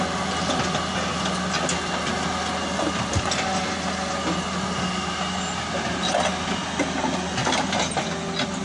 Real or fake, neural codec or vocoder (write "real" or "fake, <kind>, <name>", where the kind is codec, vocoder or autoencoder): real